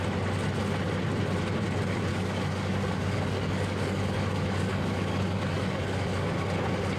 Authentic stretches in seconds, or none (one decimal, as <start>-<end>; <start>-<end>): 0.0-2.1; 6.3-7.0